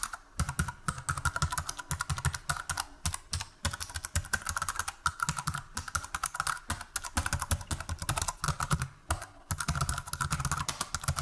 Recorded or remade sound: recorded